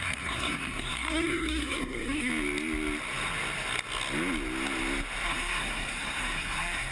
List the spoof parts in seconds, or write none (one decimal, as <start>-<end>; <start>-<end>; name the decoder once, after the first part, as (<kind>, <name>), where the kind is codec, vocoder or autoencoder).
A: 0.0-2.3 (codec, SNAC); 5.2-6.9